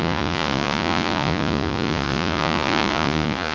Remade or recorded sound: remade